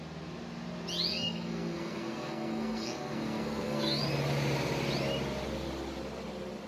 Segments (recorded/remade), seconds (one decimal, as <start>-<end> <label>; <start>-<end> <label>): 0.0-1.1 recorded; 1.1-4.0 remade; 4.0-6.7 recorded